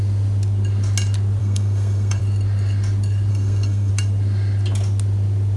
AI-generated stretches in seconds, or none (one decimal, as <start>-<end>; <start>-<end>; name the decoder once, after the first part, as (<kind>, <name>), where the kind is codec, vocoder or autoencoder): 1.4-2.2 (codec, SNAC); 3.3-3.9